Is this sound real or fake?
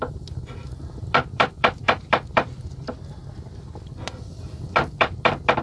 real